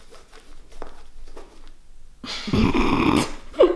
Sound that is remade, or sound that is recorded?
recorded